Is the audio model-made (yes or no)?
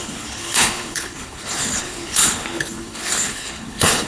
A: yes